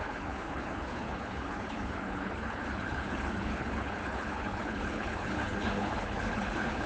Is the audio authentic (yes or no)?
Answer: no